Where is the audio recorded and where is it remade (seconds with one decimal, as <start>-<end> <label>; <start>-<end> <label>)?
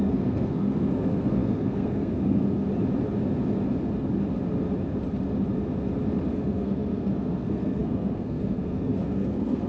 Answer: 0.0-2.7 remade; 2.7-6.3 recorded; 6.3-9.7 remade